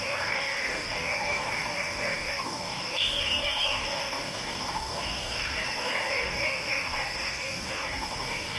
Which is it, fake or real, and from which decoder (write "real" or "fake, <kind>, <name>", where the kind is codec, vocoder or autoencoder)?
fake, codec, DAC